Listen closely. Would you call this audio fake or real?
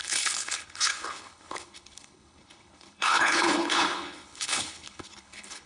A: fake